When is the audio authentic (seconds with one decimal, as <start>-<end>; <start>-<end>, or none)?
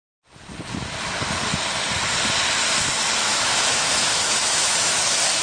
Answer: 0.0-3.3; 5.0-5.4